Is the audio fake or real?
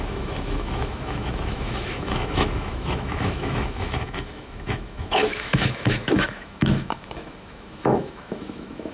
fake